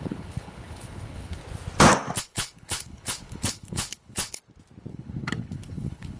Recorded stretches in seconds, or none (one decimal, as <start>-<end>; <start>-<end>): 1.4-2.2; 4.4-4.9